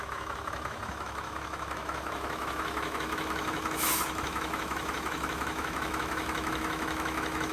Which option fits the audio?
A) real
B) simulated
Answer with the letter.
B